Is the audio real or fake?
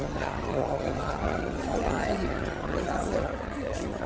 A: fake